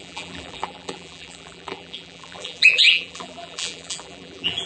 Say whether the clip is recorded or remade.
remade